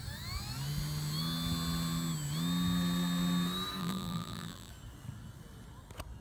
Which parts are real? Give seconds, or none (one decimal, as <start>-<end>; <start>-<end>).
0.0-3.8; 4.7-6.2